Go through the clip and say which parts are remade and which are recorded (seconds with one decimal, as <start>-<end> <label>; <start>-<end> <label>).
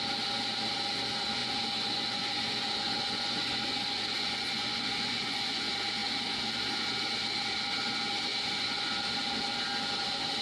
0.0-1.4 recorded; 1.4-5.6 remade; 5.6-8.3 recorded; 8.3-8.9 remade; 8.9-10.4 recorded